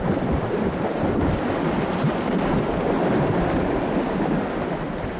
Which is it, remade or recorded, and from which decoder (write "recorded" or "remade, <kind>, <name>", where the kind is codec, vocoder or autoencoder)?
recorded